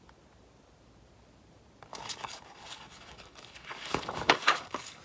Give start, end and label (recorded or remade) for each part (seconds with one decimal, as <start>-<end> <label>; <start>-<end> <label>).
0.0-1.9 recorded; 1.9-5.0 remade